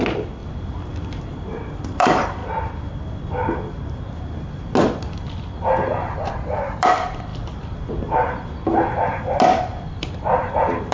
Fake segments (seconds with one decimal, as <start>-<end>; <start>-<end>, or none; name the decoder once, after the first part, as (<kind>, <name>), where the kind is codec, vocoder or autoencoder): 0.0-0.4 (vocoder, BigVGAN v2); 1.2-2.4; 6.3-7.3; 9.9-10.9